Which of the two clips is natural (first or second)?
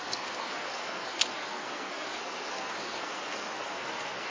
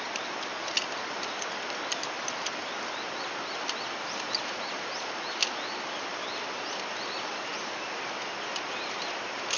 second